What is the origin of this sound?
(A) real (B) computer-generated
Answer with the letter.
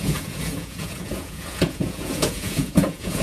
B